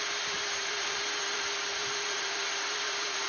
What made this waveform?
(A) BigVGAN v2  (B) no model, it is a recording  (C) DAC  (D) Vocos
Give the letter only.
A